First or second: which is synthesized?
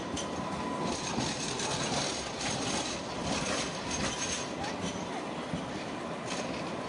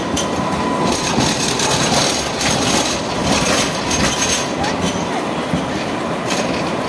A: first